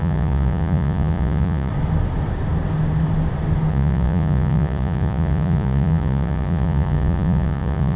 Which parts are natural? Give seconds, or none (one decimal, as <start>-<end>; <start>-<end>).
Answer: 1.7-3.7